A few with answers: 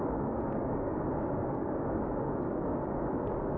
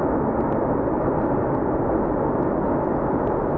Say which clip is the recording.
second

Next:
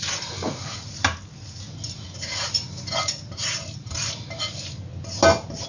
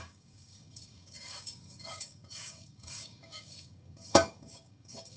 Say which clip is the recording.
first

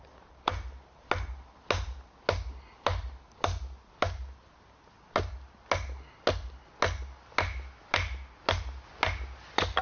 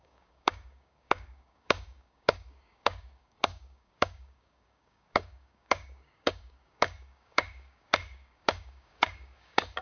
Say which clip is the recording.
first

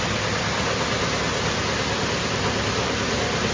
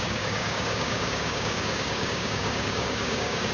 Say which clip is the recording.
first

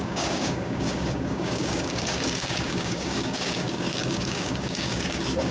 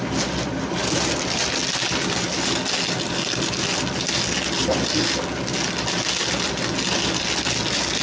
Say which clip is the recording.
second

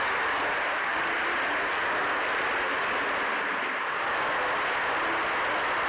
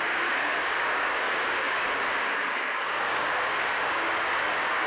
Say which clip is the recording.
first